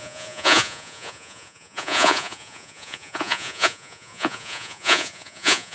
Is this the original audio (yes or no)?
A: no